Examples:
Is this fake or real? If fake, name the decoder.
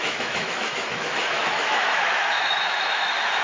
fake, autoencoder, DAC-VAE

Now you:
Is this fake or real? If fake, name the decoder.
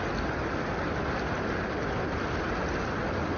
real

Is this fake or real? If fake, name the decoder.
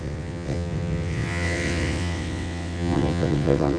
fake, vocoder, WaveNeXt